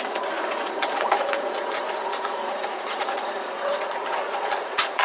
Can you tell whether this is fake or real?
fake